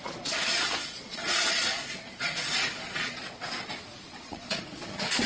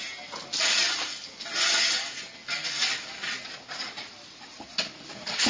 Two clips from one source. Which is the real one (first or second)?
second